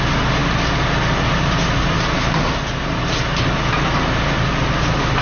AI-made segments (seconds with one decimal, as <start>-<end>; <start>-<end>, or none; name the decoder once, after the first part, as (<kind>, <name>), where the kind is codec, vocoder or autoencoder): none